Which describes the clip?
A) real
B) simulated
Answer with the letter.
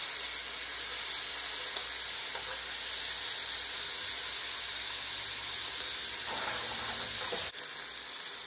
A